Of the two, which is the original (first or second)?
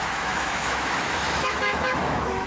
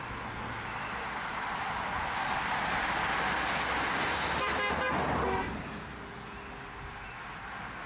second